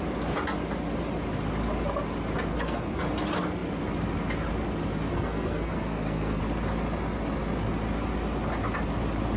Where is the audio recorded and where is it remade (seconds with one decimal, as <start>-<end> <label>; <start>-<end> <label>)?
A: 0.0-2.5 recorded; 2.5-3.0 remade; 3.0-5.1 recorded; 5.1-6.4 remade; 6.4-9.4 recorded